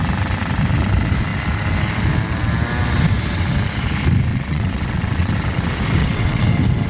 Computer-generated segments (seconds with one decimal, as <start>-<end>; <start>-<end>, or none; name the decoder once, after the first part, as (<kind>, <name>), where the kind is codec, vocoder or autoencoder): 4.3-5.3 (vocoder, WaveNeXt); 6.0-6.5